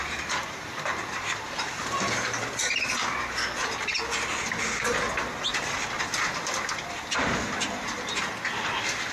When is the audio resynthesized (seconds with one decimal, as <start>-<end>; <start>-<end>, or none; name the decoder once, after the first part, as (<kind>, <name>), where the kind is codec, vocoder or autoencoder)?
0.0-3.4 (vocoder, BigVGAN v2)

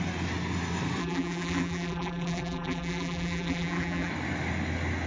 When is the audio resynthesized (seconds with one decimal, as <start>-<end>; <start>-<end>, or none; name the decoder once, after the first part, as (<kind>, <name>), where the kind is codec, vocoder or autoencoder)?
1.0-4.1 (vocoder, BigVGAN v2)

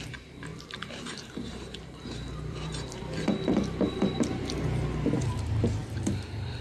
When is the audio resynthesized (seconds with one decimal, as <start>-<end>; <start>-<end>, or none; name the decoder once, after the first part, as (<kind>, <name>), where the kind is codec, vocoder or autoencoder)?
0.0-0.5 (vocoder, BigVGAN v2); 1.1-3.0; 4.4-6.6

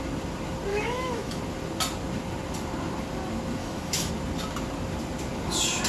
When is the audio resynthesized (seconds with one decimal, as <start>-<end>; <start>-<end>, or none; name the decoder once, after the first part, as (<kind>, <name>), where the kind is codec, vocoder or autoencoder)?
0.7-1.4 (autoencoder, DAC-VAE); 3.6-4.1

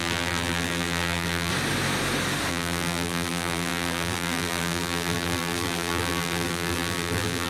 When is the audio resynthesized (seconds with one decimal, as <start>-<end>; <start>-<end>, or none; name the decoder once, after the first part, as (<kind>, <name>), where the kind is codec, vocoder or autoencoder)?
0.0-1.5 (vocoder, BigVGAN v2); 2.5-7.5

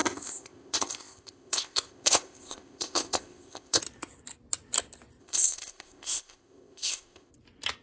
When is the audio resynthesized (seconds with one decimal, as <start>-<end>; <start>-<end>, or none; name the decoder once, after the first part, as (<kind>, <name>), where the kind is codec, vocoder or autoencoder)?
0.0-3.8 (codec, ZipCodec); 5.2-7.3

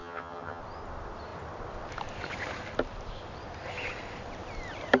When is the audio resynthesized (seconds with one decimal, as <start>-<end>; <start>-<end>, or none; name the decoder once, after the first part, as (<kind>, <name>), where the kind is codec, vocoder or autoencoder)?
0.0-0.6 (vocoder, HiFi-GAN)